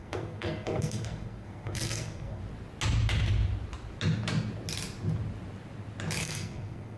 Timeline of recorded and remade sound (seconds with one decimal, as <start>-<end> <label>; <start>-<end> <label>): 0.0-2.4 remade; 2.4-6.2 recorded; 6.2-7.0 remade